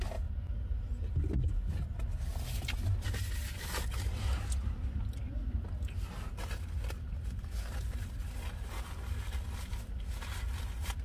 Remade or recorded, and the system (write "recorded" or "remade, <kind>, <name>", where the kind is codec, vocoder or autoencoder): recorded